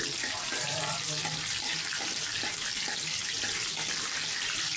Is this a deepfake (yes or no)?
no